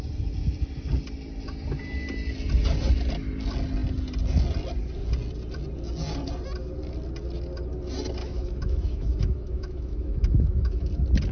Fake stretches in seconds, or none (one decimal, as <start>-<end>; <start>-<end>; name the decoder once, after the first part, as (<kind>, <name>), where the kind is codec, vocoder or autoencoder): 8.2-10.9 (autoencoder, DAC-VAE)